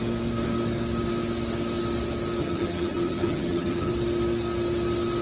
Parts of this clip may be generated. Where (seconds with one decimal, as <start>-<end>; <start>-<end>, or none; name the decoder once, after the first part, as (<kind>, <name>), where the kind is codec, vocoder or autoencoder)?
2.4-3.9 (vocoder, HiFi-GAN)